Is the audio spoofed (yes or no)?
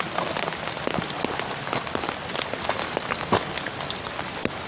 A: no